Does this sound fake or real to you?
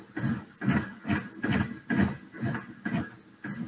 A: real